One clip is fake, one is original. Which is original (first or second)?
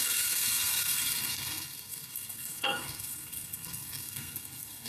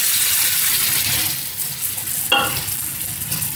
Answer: second